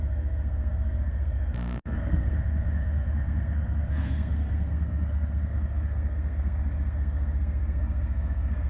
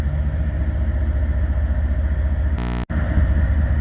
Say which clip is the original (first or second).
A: second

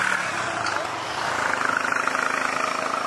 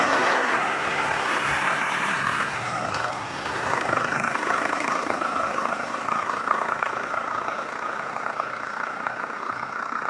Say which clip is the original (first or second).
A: first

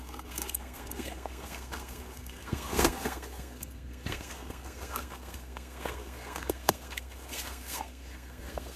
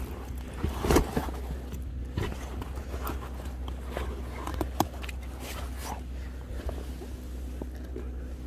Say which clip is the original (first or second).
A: second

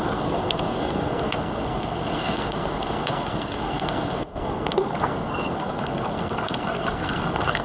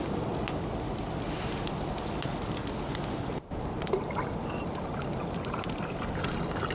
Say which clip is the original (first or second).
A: second